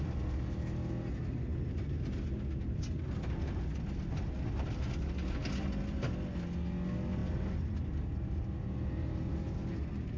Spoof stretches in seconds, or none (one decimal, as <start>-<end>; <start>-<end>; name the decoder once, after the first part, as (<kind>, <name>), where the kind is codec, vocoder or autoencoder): none